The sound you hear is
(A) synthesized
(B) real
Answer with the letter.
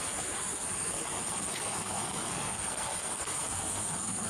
A